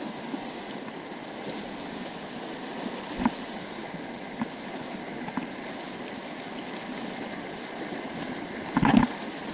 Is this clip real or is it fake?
real